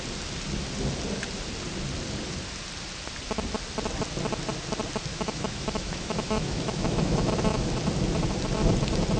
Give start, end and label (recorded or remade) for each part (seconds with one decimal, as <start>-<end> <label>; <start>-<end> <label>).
0.0-5.1 recorded; 5.1-7.7 remade; 7.7-9.2 recorded